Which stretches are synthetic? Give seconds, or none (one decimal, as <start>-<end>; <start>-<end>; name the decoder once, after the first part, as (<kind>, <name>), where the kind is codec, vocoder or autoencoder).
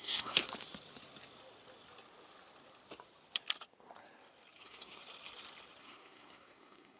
0.0-0.4 (codec, SNAC); 4.6-5.0; 5.8-7.0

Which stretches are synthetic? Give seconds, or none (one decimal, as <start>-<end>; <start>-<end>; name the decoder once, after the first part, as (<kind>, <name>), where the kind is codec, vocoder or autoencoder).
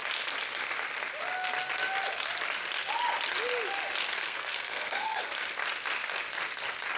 4.2-5.2 (codec, SNAC)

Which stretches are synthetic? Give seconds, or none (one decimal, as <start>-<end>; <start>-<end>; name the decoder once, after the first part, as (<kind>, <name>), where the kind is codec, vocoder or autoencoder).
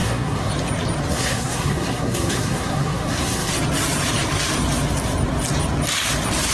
0.0-0.5 (codec, SNAC); 1.1-3.5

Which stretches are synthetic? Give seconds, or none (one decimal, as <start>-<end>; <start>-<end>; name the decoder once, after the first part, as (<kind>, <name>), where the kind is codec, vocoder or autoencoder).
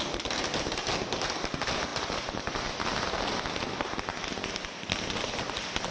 none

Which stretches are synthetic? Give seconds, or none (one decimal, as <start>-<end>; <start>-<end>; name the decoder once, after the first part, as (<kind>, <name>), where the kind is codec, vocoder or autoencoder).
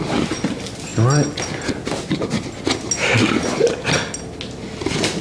none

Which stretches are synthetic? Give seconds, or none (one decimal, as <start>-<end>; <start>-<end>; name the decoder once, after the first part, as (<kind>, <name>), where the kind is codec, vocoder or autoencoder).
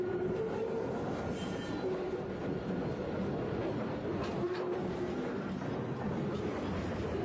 none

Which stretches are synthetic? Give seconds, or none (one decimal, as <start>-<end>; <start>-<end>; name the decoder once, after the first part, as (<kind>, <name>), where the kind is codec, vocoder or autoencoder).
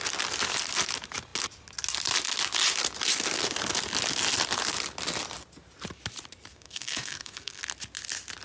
6.5-7.6 (codec, SNAC)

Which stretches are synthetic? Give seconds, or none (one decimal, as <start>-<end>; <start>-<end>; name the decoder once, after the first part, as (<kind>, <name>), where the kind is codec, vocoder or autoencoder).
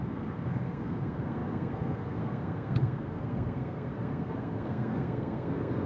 0.0-5.9 (codec, SNAC)